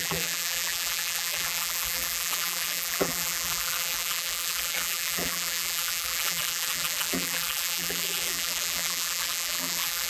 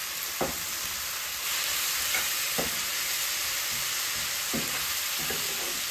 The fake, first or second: first